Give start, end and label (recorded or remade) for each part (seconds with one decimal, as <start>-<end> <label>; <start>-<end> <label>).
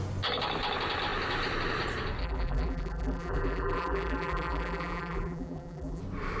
0.0-2.2 recorded; 2.2-6.0 remade; 6.0-6.4 recorded